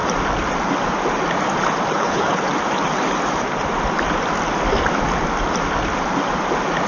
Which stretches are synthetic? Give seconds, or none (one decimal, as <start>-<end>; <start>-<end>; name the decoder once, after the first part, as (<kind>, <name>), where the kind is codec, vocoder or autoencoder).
1.9-2.5 (codec, HILCodec)

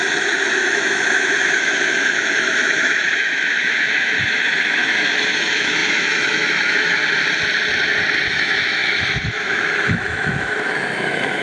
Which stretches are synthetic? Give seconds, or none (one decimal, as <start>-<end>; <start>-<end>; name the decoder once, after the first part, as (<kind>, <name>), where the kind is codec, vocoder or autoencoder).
0.0-7.0 (autoencoder, DAC-VAE); 8.3-11.4